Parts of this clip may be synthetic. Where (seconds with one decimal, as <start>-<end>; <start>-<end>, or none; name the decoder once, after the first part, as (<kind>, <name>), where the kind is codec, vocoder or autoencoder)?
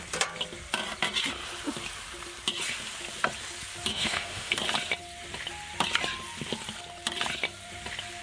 3.9-4.6 (autoencoder, DAC-VAE)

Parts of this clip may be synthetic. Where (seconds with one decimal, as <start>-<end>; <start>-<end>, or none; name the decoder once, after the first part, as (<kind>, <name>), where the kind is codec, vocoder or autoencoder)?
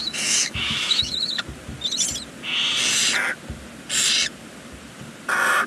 0.0-1.4 (autoencoder, DAC-VAE)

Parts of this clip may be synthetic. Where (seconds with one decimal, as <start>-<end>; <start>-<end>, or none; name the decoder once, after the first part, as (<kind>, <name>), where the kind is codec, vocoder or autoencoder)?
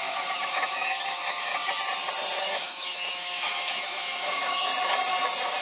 0.0-1.5 (autoencoder, DAC-VAE); 2.4-4.7